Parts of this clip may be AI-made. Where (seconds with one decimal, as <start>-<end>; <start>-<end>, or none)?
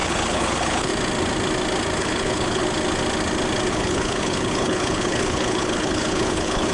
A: 0.0-0.9; 2.0-2.6; 3.7-6.7